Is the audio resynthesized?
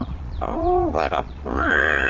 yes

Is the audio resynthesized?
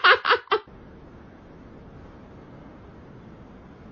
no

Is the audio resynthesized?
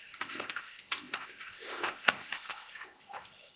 yes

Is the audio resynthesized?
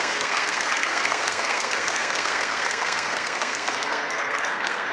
yes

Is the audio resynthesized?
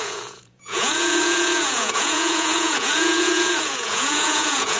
yes